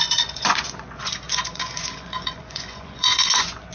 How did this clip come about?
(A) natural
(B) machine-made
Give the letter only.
B